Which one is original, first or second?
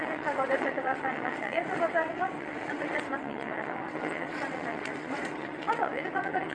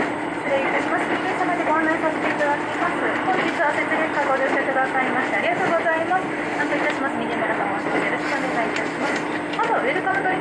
second